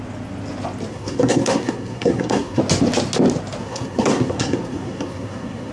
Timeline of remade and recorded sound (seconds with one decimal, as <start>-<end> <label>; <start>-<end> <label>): 0.0-0.9 recorded; 0.9-2.6 remade; 2.6-3.6 recorded; 3.6-5.7 remade